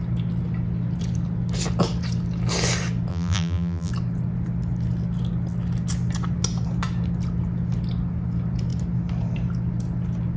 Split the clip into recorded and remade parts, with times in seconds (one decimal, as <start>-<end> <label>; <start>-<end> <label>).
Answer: 0.0-3.1 recorded; 3.1-3.9 remade; 3.9-10.4 recorded